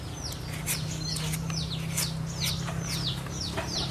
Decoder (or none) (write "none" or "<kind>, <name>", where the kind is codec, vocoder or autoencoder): none